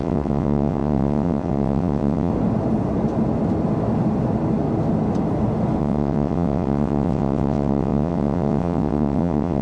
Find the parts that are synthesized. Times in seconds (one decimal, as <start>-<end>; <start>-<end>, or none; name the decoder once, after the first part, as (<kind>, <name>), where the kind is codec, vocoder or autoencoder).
0.0-2.3 (vocoder, WaveNeXt); 5.8-9.6

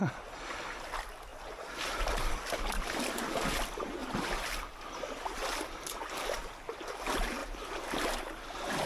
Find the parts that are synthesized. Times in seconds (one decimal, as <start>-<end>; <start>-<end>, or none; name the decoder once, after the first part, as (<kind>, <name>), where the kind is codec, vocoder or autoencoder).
4.0-5.9 (vocoder, BigVGAN v2); 7.4-8.2

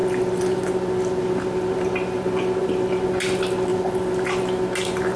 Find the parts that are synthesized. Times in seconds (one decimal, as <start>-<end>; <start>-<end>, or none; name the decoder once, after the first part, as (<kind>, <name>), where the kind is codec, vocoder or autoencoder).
none

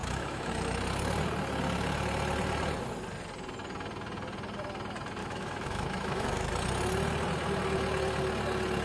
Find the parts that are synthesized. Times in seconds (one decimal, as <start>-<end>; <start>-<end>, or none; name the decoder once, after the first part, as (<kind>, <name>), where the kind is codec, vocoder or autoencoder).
0.0-0.5 (autoencoder, DAC-VAE); 5.2-6.5

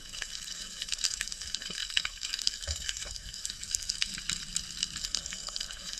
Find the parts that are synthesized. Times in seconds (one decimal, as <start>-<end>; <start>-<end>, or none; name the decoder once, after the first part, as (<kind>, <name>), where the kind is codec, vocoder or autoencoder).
0.0-4.1 (codec, SNAC); 5.0-6.0